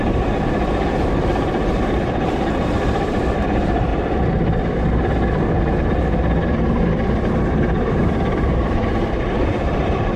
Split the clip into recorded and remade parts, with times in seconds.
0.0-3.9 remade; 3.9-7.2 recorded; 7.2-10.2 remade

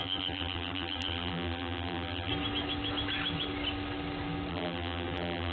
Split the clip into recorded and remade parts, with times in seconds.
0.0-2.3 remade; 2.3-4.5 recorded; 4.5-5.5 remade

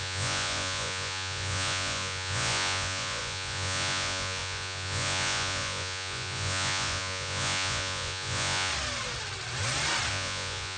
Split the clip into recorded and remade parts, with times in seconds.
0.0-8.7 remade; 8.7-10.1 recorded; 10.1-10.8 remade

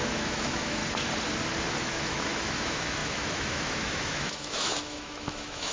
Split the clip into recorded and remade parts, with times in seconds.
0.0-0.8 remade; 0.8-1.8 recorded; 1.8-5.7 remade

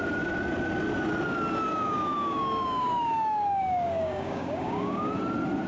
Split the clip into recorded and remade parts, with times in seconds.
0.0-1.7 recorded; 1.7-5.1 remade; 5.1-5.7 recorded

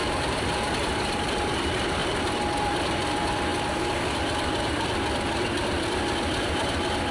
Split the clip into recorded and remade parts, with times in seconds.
0.0-2.0 remade; 2.0-2.6 recorded; 2.6-3.5 remade; 3.5-4.2 recorded; 4.2-7.1 remade

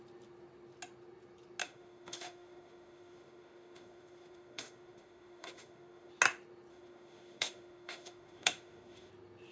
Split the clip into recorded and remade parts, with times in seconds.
0.0-1.6 recorded; 1.6-6.1 remade; 6.1-6.7 recorded; 6.7-9.1 remade; 9.1-9.5 recorded

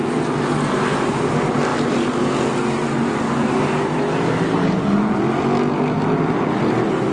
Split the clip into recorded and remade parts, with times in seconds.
0.0-7.1 recorded